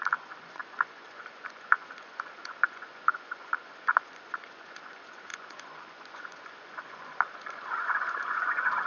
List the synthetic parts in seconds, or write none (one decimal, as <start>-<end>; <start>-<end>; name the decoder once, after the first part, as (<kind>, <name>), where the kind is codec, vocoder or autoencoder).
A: 0.0-8.9 (vocoder, Vocos)